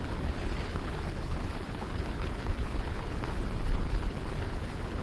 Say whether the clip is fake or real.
fake